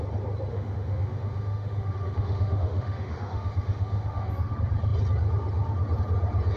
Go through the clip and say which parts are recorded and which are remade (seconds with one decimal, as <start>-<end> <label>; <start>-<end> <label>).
0.0-0.5 recorded; 0.5-4.5 remade; 4.5-6.6 recorded